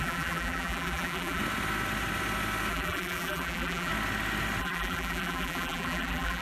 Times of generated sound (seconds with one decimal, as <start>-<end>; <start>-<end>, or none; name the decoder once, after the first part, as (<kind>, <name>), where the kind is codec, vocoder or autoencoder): 0.0-1.4 (vocoder, BigVGAN v2); 2.7-3.9; 4.6-6.4